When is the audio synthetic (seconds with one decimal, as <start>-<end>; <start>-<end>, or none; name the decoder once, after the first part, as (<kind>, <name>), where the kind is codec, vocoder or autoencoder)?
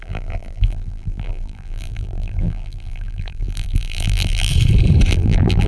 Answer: 0.0-4.5 (vocoder, BigVGAN v2); 5.1-5.7